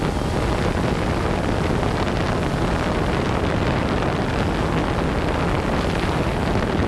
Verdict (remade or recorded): recorded